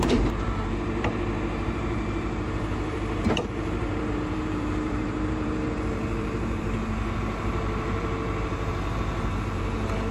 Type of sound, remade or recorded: remade